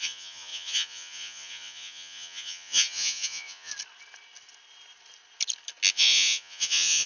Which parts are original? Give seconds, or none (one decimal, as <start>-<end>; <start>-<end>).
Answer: 3.7-5.9